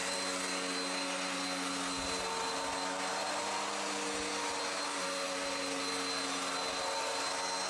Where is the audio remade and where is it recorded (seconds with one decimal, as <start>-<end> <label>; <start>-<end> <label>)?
0.0-7.7 recorded